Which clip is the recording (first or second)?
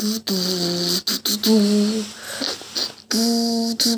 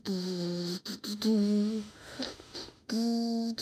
first